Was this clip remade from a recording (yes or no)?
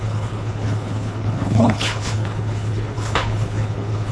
yes